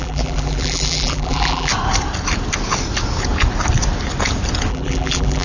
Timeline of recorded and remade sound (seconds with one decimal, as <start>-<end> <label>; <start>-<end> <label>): 0.0-1.7 remade; 1.7-4.7 recorded; 4.7-5.4 remade